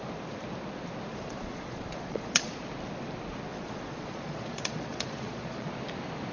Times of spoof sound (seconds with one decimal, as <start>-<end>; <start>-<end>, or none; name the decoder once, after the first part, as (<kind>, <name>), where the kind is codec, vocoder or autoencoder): 1.1-2.5 (vocoder, Vocos); 3.5-5.7